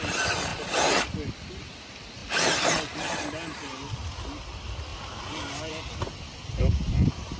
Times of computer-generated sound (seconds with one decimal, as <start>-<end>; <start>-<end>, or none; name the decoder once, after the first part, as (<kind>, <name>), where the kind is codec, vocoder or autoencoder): none